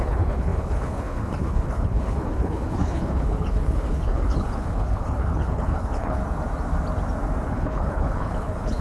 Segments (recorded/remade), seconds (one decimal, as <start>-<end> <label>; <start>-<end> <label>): 0.0-6.2 remade; 6.2-7.5 recorded; 7.5-8.8 remade